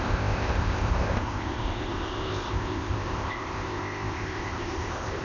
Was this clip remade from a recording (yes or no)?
yes